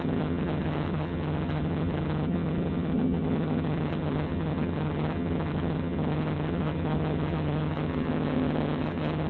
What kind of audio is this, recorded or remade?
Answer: remade